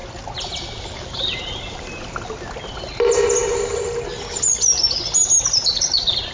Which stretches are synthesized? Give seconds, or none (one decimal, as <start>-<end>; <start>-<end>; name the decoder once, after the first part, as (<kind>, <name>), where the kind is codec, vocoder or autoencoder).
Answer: none